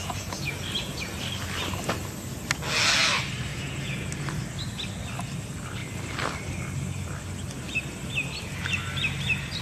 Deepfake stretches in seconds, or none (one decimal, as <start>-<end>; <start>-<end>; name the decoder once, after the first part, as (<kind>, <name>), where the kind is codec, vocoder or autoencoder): 0.0-1.0 (vocoder, Vocos); 3.5-4.1